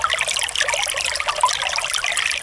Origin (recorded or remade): recorded